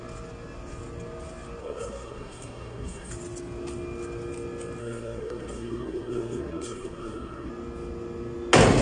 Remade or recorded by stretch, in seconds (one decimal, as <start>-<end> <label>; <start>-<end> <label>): 0.0-1.6 recorded; 1.6-3.1 remade; 3.1-4.8 recorded; 4.8-7.5 remade; 7.5-8.8 recorded